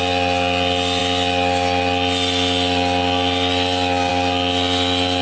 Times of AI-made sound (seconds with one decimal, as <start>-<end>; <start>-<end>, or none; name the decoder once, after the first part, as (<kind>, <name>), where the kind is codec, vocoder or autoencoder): none